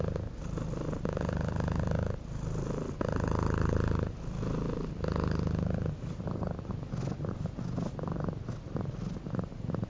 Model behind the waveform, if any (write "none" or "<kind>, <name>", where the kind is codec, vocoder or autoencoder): none